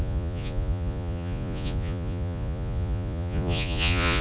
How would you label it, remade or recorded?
remade